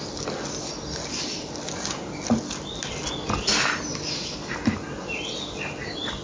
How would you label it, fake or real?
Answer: real